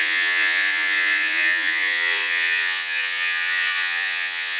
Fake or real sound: fake